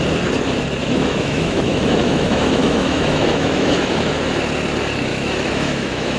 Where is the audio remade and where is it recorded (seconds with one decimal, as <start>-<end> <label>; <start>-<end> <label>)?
0.0-0.8 recorded; 0.8-4.1 remade; 4.1-5.1 recorded; 5.1-6.2 remade

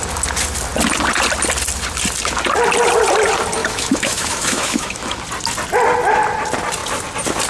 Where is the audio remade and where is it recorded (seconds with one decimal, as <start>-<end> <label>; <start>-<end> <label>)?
0.0-3.6 recorded; 3.6-5.2 remade; 5.2-7.5 recorded

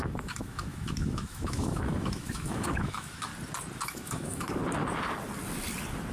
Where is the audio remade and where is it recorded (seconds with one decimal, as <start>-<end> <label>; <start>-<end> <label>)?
0.0-3.3 remade; 3.3-3.8 recorded; 3.8-4.6 remade; 4.6-6.1 recorded

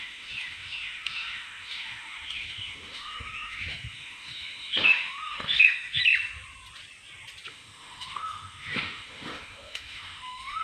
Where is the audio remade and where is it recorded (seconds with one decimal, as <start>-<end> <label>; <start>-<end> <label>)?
0.0-6.0 remade; 6.0-7.5 recorded; 7.5-10.6 remade

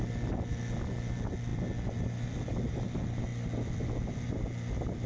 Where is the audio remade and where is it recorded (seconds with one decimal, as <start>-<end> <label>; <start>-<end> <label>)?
0.0-5.1 recorded

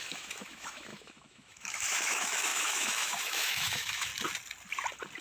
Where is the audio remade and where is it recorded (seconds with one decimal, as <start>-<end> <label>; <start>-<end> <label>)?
0.0-4.1 remade; 4.1-5.2 recorded